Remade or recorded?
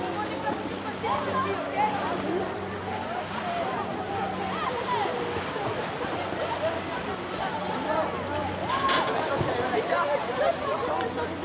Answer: recorded